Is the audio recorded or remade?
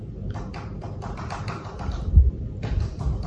recorded